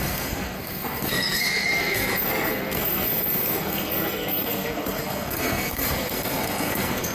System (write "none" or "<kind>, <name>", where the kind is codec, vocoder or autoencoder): codec, SNAC